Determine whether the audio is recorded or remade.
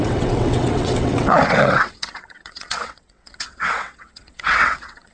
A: remade